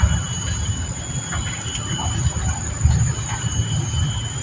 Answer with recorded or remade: recorded